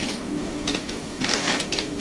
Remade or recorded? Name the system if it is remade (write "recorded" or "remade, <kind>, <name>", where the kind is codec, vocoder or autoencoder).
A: remade, codec, DAC